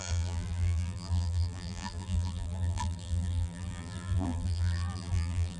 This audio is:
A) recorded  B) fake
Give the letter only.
B